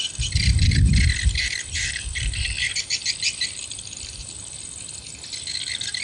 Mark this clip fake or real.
fake